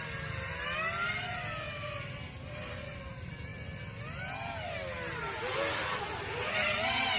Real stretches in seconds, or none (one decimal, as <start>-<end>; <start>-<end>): 0.0-7.2